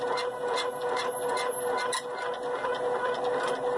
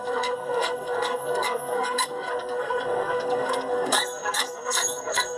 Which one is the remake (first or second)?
second